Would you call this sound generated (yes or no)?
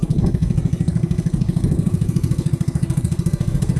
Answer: yes